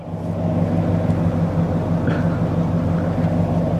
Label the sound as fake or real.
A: real